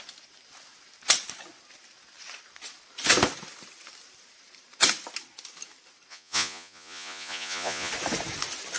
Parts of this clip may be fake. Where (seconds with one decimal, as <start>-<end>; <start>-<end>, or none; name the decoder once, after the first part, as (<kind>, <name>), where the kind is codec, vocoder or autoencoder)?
6.1-7.9 (vocoder, Vocos)